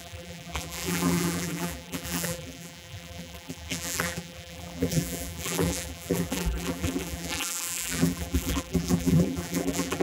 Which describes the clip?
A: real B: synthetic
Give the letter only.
B